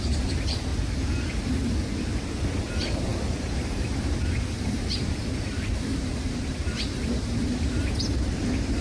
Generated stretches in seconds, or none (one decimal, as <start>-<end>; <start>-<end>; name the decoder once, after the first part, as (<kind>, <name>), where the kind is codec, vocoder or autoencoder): 0.0-0.7 (vocoder, BigVGAN v2); 2.6-8.8